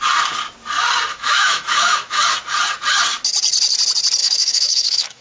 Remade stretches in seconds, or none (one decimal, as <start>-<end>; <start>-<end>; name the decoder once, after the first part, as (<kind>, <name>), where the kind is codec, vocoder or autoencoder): 1.1-2.2 (autoencoder, DAC-VAE); 4.2-5.2